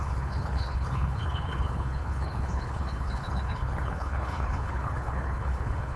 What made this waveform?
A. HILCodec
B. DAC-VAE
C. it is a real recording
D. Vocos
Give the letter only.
A